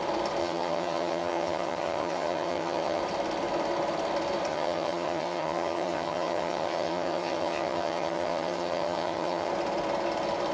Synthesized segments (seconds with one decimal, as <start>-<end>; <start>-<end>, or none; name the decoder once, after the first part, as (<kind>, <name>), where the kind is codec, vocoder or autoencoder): 0.4-3.0 (vocoder, HiFi-GAN); 4.5-9.5